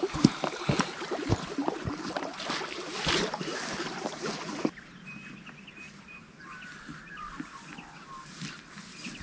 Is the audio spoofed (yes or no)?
no